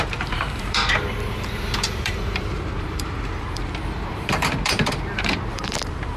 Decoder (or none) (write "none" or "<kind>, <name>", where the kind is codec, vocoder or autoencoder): vocoder, BigVGAN v2